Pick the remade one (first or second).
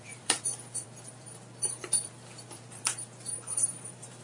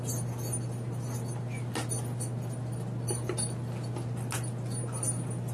first